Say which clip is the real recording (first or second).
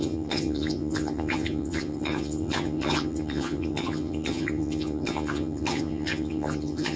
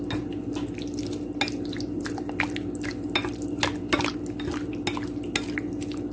second